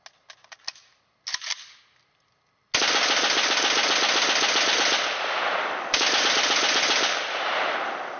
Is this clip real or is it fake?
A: real